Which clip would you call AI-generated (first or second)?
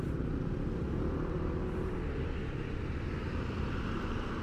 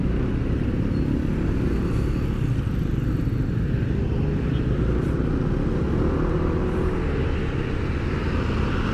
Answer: first